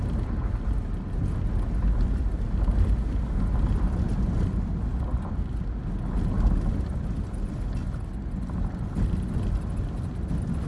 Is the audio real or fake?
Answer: real